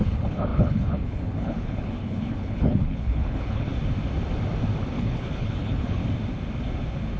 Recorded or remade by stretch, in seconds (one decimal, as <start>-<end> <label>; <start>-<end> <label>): 0.0-3.7 remade; 3.7-4.9 recorded; 4.9-6.0 remade; 6.0-7.2 recorded

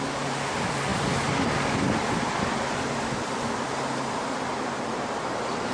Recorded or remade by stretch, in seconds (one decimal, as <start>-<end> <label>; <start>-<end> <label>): 0.0-5.7 recorded

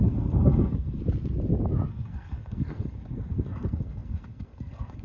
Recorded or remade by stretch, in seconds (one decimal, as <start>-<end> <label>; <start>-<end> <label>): 0.0-1.0 remade; 1.0-1.9 recorded; 1.9-5.0 remade

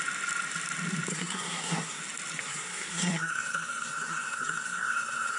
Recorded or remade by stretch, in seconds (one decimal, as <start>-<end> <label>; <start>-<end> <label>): 0.0-1.1 recorded; 1.1-2.0 remade; 2.0-2.4 recorded; 2.4-5.4 remade

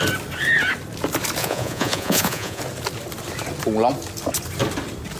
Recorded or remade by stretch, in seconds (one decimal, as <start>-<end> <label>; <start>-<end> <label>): 0.0-1.4 recorded; 1.4-2.6 remade; 2.6-5.2 recorded